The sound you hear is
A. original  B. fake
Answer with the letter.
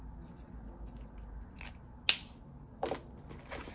A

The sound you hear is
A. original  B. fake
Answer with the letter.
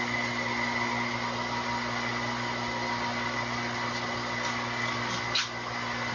A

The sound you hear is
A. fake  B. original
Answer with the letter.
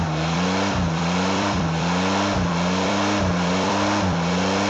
A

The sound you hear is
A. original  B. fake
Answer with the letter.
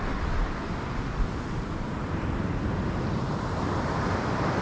B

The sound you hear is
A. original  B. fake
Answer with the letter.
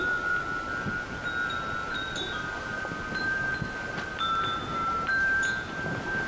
B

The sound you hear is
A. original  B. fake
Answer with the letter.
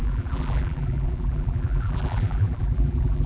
B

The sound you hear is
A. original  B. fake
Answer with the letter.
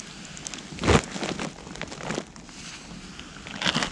A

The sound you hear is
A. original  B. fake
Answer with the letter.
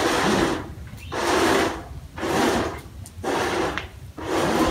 A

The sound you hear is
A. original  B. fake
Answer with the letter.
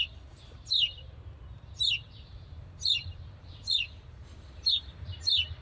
B